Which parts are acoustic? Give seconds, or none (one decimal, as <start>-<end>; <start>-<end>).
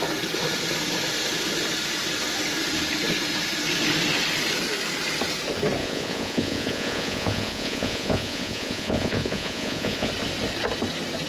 0.0-5.8; 10.1-11.3